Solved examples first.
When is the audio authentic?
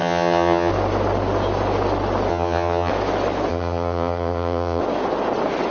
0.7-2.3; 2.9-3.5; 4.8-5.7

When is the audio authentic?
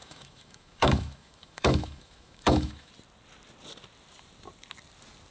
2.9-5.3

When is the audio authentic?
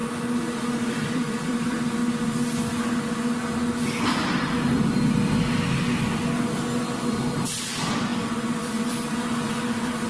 0.0-0.9; 2.0-7.0